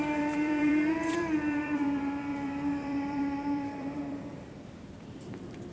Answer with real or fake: fake